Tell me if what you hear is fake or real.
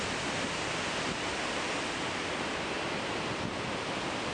real